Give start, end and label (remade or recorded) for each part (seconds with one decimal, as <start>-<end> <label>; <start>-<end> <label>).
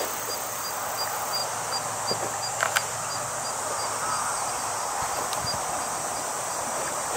0.0-6.5 recorded; 6.5-7.2 remade